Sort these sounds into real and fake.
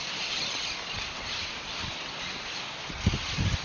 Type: real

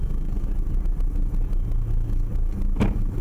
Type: real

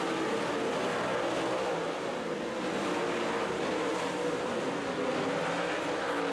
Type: real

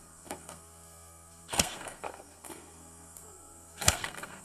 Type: fake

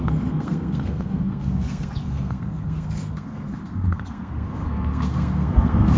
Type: fake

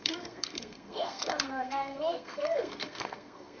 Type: fake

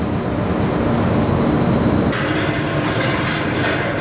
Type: real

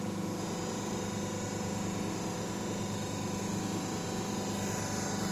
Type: real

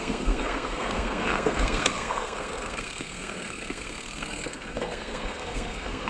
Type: fake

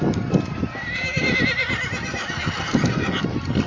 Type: real